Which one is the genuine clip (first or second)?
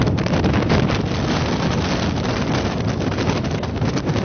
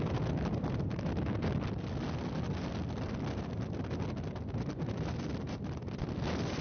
second